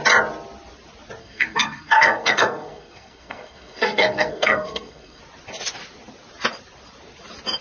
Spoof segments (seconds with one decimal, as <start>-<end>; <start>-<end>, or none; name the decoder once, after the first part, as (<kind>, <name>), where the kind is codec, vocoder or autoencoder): 1.2-5.2 (codec, SNAC)